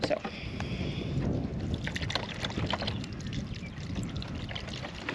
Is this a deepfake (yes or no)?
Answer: no